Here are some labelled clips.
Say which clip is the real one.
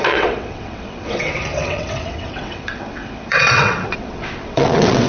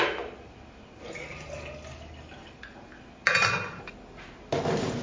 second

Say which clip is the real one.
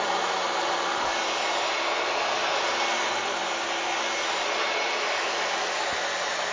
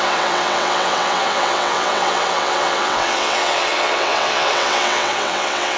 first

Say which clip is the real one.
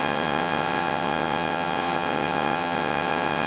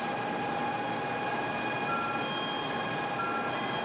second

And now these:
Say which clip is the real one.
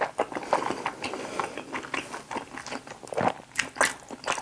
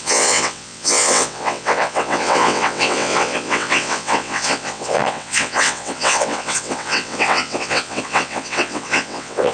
first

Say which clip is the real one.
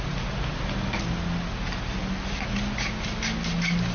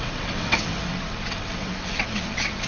first